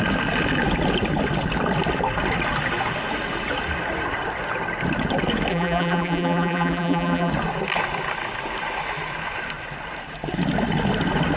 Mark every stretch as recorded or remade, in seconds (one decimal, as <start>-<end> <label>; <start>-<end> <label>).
0.0-5.5 recorded; 5.5-7.3 remade; 7.3-11.4 recorded